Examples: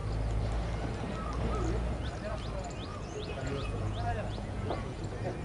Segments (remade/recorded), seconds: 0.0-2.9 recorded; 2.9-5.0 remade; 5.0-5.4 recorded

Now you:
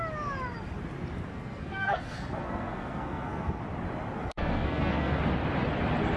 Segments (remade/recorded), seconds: 0.0-1.3 recorded; 1.3-3.6 remade; 3.6-4.2 recorded; 4.2-5.2 remade; 5.2-6.2 recorded